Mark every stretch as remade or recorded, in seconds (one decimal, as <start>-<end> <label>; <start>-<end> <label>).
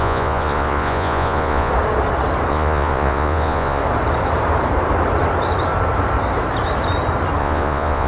0.0-1.7 remade; 1.7-2.5 recorded; 2.5-3.8 remade; 3.8-7.4 recorded; 7.4-8.1 remade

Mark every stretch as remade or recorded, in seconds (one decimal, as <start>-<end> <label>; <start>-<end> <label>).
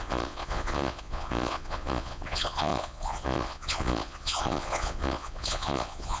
0.0-6.2 remade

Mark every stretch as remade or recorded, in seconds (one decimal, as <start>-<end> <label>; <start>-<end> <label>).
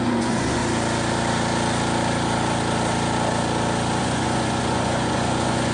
0.0-0.6 remade; 0.6-4.0 recorded; 4.0-5.7 remade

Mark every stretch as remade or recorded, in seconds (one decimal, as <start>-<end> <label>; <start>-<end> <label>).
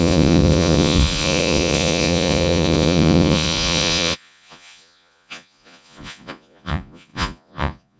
0.0-8.0 remade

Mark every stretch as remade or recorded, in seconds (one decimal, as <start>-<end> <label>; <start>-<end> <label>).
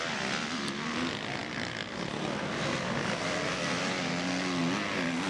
0.0-5.3 recorded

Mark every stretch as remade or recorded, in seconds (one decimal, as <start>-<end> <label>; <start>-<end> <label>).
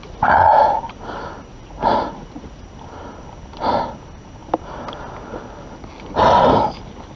0.0-0.8 remade; 0.8-1.5 recorded; 1.5-2.6 remade; 2.6-7.2 recorded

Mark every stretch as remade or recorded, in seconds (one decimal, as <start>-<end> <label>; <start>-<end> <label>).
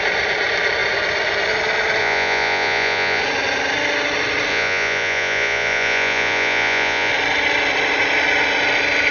0.0-2.0 recorded; 2.0-3.2 remade; 3.2-4.5 recorded; 4.5-7.1 remade; 7.1-9.1 recorded